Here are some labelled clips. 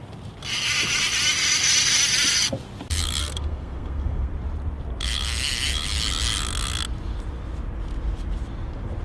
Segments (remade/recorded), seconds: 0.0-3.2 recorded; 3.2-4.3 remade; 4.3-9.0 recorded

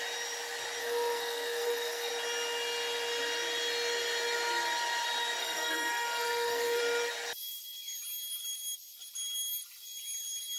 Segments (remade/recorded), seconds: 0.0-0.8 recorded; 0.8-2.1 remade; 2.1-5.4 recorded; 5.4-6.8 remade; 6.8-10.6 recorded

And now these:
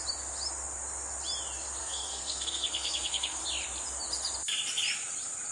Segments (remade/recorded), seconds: 0.0-1.8 recorded; 1.8-3.4 remade; 3.4-5.5 recorded

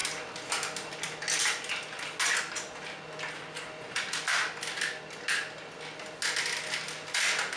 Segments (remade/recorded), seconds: 0.0-7.6 recorded

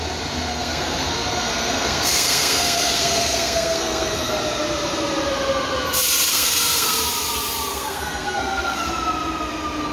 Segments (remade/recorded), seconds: 0.0-0.5 recorded; 0.5-4.3 remade; 4.3-6.3 recorded; 6.3-7.0 remade; 7.0-7.7 recorded; 7.7-8.9 remade; 8.9-9.9 recorded

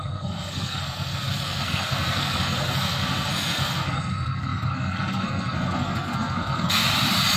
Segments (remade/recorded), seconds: 0.0-6.8 remade; 6.8-7.4 recorded